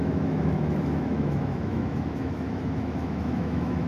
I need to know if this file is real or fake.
fake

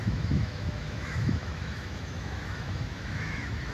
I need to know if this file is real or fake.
fake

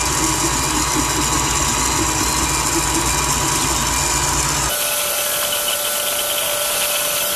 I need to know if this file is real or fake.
real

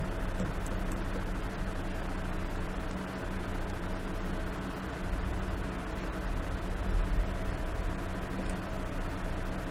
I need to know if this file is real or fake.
real